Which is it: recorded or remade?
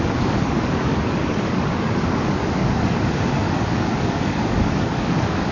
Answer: remade